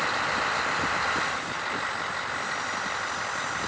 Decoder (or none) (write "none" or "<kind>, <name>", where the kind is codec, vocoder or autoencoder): none